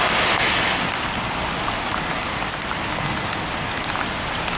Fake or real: real